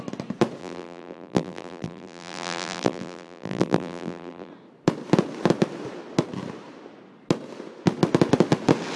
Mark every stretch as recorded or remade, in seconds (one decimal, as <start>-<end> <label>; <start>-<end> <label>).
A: 0.0-0.6 recorded; 0.6-4.5 remade; 4.5-9.0 recorded